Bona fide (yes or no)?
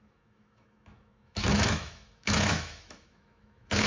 no